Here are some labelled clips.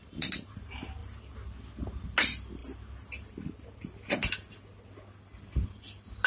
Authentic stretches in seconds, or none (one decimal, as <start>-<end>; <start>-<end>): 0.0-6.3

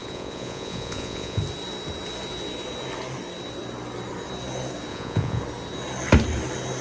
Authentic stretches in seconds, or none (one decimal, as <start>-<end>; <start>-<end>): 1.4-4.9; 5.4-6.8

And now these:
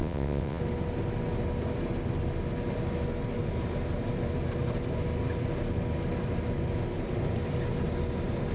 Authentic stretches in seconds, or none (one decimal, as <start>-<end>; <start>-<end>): 0.6-8.5

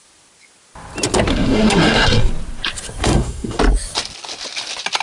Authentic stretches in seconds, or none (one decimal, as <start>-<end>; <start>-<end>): 0.0-1.3; 2.3-3.0; 3.6-5.0